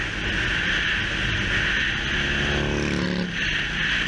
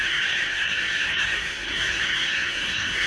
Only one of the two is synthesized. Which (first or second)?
second